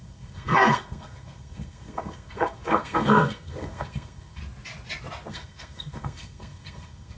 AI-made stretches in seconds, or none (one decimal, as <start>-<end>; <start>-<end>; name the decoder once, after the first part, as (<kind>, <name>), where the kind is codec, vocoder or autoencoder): 0.0-4.4 (codec, SNAC); 5.3-7.2